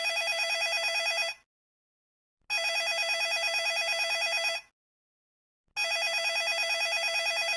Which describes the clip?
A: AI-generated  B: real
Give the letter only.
B